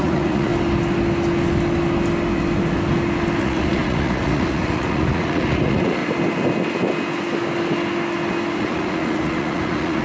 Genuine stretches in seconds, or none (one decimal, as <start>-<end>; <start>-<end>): 0.5-3.4; 6.0-8.6